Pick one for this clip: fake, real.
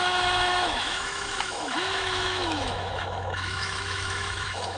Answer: fake